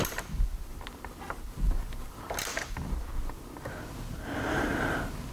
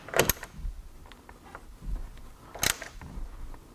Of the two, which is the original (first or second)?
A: second